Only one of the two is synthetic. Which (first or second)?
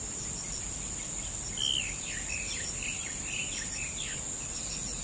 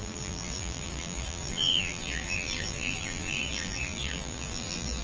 second